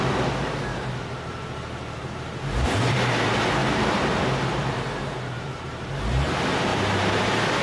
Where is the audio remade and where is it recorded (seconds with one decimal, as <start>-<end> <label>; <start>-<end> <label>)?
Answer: 0.0-0.7 recorded; 0.7-3.0 remade; 3.0-3.6 recorded; 3.6-6.0 remade; 6.0-6.7 recorded; 6.7-7.6 remade